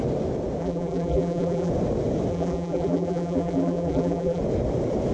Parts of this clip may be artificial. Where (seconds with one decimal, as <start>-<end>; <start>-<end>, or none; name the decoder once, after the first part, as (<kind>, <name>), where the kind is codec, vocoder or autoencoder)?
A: 0.6-1.7 (vocoder, BigVGAN v2); 2.3-4.4